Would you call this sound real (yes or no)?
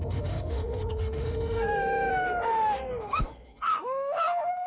no